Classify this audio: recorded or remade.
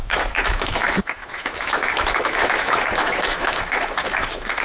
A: remade